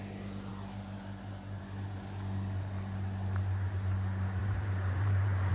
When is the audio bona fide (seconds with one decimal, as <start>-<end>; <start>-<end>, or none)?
0.0-4.4